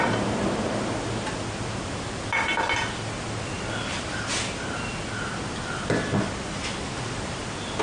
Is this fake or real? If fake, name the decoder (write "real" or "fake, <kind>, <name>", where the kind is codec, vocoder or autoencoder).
real